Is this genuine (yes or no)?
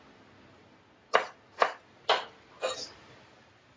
yes